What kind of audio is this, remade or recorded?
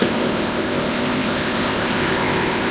remade